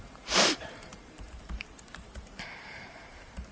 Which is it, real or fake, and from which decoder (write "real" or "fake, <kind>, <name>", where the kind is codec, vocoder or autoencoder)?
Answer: fake, vocoder, BigVGAN v2